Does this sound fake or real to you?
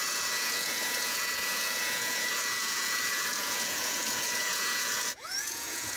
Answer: fake